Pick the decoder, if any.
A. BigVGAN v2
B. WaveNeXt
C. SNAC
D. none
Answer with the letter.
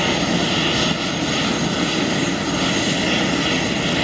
D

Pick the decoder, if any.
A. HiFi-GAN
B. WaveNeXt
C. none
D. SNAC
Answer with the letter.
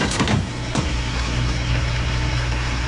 D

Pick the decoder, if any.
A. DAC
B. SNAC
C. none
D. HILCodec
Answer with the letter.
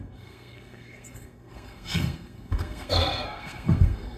B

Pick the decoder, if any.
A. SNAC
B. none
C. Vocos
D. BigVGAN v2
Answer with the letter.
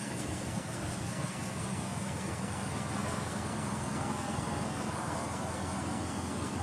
A